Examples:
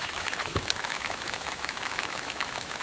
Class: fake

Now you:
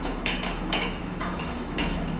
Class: fake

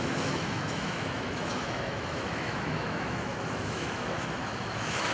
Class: fake